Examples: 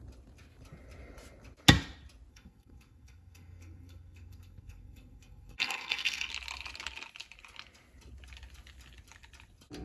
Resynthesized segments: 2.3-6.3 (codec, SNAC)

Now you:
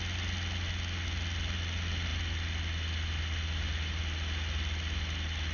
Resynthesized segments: none